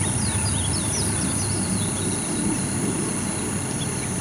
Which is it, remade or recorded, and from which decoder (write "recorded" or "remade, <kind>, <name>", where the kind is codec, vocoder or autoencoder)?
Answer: recorded